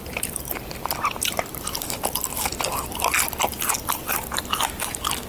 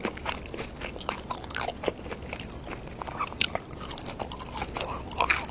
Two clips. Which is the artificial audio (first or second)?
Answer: first